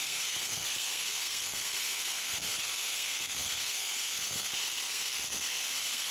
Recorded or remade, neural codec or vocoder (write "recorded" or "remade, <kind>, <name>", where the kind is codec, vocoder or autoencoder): remade, codec, SNAC